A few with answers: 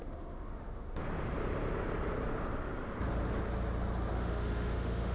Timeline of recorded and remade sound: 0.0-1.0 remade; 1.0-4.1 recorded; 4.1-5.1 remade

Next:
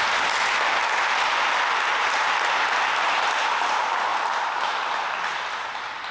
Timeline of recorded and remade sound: 0.0-6.1 recorded

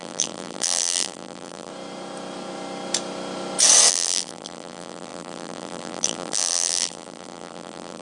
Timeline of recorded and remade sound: 0.0-1.7 remade; 1.7-3.9 recorded; 3.9-8.0 remade